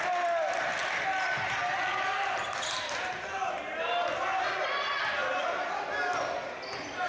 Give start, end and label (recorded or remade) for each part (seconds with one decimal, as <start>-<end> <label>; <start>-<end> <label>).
0.0-7.1 recorded